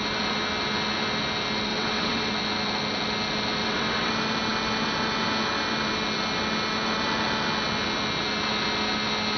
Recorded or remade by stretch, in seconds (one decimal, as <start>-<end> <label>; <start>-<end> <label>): 0.0-1.7 recorded; 1.7-2.3 remade; 2.3-3.6 recorded; 3.6-4.1 remade; 4.1-9.4 recorded